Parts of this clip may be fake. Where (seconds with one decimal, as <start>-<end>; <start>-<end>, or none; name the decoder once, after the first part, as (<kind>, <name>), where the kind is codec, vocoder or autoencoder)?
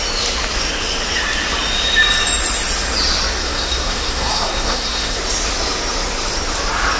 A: 3.4-5.2 (codec, SNAC)